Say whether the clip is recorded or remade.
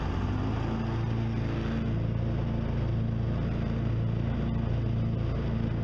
recorded